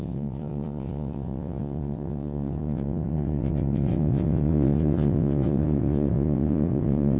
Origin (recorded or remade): remade